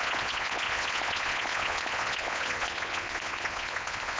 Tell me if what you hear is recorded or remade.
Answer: remade